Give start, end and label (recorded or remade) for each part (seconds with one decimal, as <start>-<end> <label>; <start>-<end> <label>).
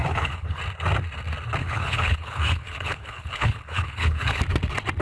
0.0-0.6 remade; 0.6-1.6 recorded; 1.6-4.4 remade; 4.4-5.0 recorded